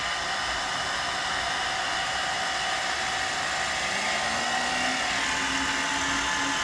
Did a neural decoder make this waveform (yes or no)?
no